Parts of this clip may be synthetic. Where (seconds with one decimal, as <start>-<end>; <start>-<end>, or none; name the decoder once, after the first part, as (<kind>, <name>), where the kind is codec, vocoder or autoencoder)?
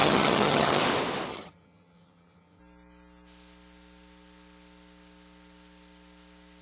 0.0-0.8 (vocoder, HiFi-GAN); 1.3-2.6